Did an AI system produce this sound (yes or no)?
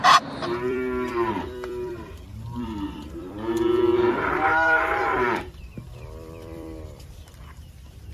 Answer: yes